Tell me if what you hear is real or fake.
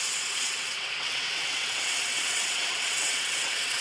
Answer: fake